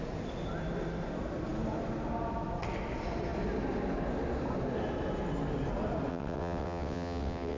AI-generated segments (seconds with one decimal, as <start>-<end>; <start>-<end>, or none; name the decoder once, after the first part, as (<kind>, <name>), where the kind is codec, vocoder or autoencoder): 6.1-7.6 (vocoder, WaveNeXt)

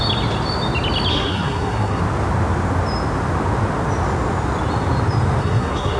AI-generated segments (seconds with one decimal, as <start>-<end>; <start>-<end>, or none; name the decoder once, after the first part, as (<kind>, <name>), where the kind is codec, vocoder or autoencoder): 1.1-2.0 (codec, SNAC); 5.4-6.0

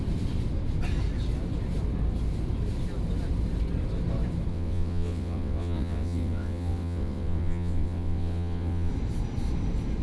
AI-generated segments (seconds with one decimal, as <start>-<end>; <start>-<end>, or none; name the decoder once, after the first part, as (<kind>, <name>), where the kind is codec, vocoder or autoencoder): 4.5-8.9 (vocoder, WaveNeXt)

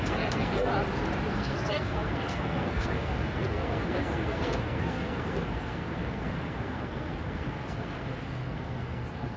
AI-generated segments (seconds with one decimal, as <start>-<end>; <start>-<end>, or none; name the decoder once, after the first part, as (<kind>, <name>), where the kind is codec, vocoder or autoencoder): 0.0-0.7 (codec, SNAC); 1.3-9.4

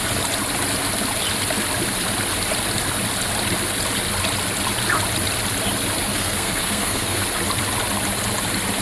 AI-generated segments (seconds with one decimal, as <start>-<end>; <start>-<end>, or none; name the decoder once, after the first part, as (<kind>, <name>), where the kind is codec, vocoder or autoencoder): 6.1-7.2 (codec, SNAC)

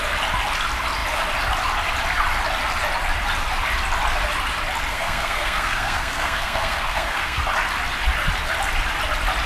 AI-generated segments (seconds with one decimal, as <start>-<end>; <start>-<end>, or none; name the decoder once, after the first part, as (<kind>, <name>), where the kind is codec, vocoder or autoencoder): 4.9-7.4 (codec, SNAC)

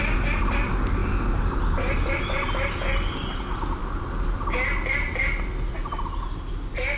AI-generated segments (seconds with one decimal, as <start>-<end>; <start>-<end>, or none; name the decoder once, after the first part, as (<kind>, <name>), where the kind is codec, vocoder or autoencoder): none

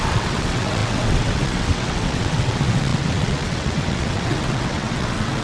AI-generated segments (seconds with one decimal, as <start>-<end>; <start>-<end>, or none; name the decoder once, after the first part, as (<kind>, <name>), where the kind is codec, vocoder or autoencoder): 0.0-5.4 (vocoder, WaveNeXt)